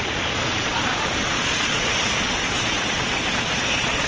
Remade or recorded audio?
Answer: remade